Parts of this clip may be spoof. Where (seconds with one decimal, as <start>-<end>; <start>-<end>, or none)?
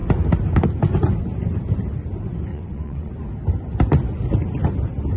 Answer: 2.5-3.1